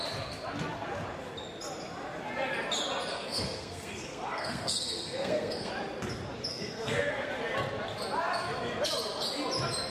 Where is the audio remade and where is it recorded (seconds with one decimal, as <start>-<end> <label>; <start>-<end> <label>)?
0.0-3.1 recorded; 3.1-5.7 remade; 5.7-6.5 recorded; 6.5-7.3 remade; 7.3-9.9 recorded